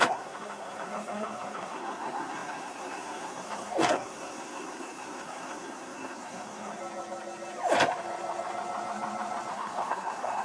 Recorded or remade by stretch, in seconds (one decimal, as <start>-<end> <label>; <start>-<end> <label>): 0.0-6.8 remade; 6.8-9.5 recorded; 9.5-10.4 remade